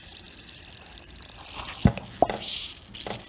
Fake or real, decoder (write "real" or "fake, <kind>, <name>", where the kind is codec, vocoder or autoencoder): real